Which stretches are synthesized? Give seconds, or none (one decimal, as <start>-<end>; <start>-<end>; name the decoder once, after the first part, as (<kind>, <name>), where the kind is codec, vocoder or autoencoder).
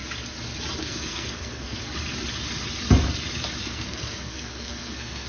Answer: 0.8-1.8 (codec, SNAC); 3.6-5.3